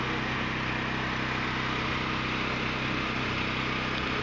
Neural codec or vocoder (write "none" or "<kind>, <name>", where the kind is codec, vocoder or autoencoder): none